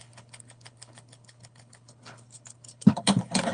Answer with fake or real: fake